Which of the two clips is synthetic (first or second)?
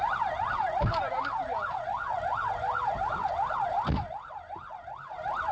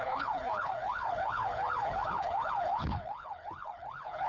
second